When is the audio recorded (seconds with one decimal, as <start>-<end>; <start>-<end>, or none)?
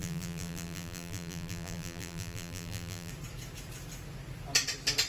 3.1-5.1